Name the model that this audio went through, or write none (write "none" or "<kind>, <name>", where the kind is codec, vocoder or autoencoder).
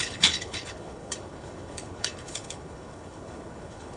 codec, HILCodec